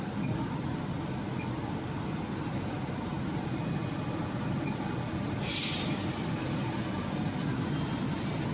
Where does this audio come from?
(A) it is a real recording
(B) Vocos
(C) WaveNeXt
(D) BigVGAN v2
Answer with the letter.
A